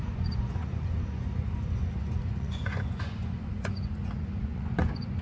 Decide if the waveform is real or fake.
fake